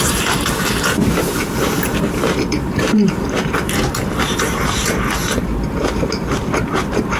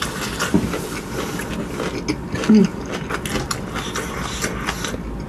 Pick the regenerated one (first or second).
first